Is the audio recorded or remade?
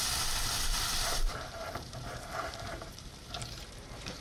remade